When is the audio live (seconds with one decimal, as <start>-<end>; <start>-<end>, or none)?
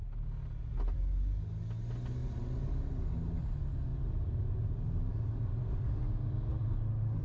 0.0-7.2